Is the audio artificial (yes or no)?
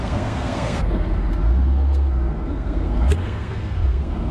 yes